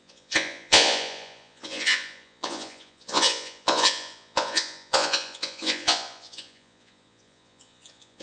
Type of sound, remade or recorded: remade